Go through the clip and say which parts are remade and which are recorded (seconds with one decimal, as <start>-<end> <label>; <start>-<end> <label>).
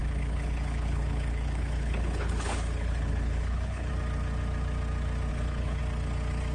0.0-3.9 remade; 3.9-5.3 recorded; 5.3-5.8 remade; 5.8-6.5 recorded